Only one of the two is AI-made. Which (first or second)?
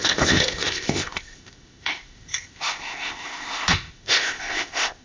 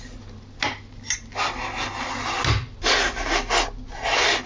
first